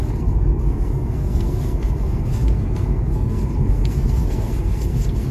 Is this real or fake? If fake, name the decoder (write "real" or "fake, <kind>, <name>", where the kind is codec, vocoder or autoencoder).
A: fake, codec, SNAC